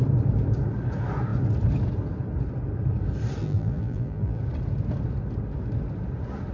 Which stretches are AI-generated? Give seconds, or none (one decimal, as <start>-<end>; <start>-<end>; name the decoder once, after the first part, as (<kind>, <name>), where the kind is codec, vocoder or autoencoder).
3.4-4.4 (vocoder, BigVGAN v2)